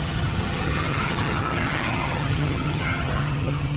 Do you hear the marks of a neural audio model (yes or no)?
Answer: yes